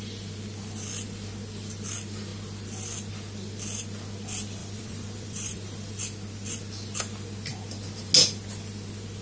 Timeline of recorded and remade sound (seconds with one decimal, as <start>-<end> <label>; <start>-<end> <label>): 0.0-4.6 recorded; 4.6-6.0 remade; 6.0-9.2 recorded